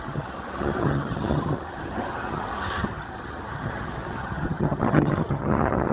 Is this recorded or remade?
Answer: remade